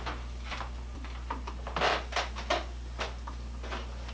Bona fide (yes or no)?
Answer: yes